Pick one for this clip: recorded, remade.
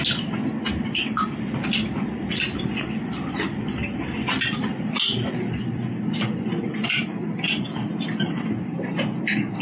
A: recorded